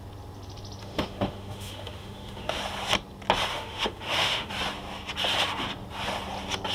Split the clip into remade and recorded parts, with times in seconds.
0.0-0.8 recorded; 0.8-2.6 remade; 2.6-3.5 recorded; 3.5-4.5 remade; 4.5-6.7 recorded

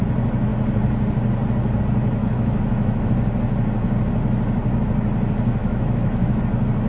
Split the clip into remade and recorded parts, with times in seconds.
0.0-2.2 recorded; 2.2-3.1 remade; 3.1-5.6 recorded; 5.6-6.4 remade; 6.4-6.9 recorded

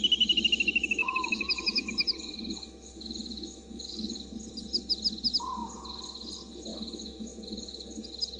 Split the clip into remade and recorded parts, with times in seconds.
0.0-1.0 recorded; 1.0-4.2 remade; 4.2-6.7 recorded; 6.7-8.0 remade; 8.0-8.4 recorded

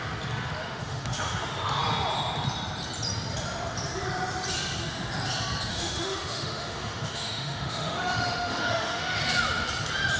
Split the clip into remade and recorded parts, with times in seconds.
0.0-0.6 recorded; 0.6-1.8 remade; 1.8-5.7 recorded; 5.7-9.2 remade; 9.2-10.2 recorded

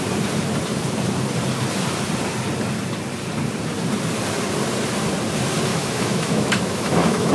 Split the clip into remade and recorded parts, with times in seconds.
0.0-5.7 recorded; 5.7-7.3 remade